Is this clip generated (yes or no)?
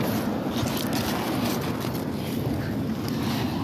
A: no